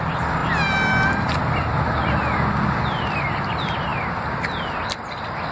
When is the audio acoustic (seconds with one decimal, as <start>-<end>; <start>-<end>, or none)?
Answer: 0.0-5.5